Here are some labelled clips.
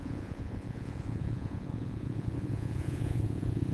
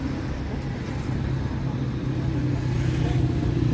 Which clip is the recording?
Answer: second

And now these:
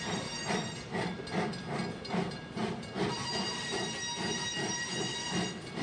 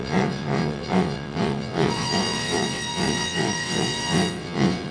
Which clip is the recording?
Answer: first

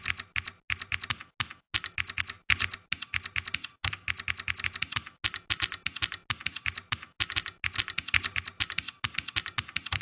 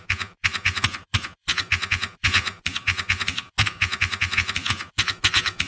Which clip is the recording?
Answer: first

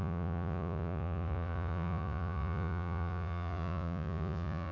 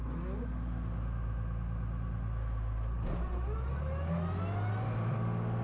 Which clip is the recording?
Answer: second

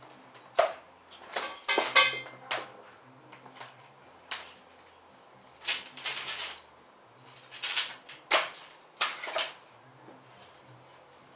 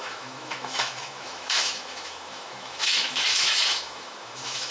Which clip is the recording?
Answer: first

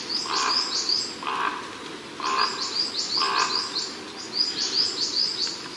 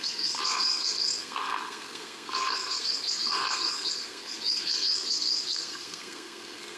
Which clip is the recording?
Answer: first